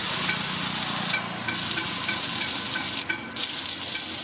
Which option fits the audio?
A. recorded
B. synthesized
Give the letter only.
A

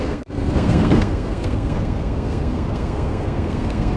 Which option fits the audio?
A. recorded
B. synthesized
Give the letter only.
B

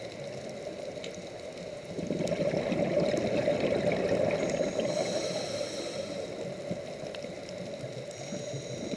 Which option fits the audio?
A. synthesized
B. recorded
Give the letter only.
B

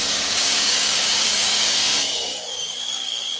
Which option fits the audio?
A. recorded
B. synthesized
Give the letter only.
B